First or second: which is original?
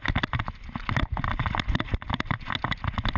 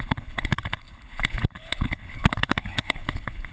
first